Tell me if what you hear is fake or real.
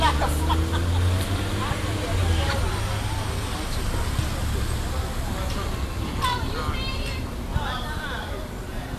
real